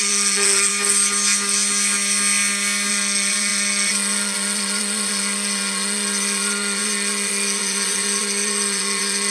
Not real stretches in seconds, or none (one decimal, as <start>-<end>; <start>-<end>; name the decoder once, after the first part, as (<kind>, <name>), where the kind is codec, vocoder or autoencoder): 0.0-0.7 (vocoder, Vocos); 2.9-9.3